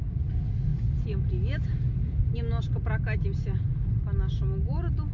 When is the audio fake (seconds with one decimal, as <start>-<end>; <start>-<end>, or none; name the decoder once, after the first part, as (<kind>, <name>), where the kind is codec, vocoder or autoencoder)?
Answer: none